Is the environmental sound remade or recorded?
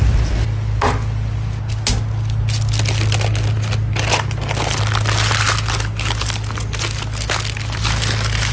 recorded